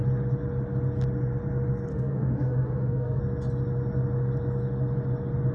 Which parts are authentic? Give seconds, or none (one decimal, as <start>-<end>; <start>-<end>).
0.0-1.9; 3.2-5.5